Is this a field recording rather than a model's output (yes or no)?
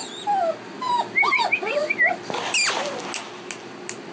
yes